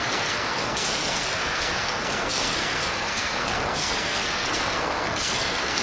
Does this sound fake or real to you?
fake